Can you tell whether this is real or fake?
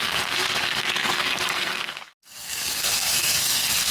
fake